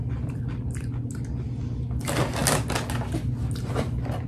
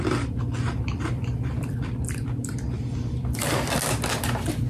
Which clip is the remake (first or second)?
second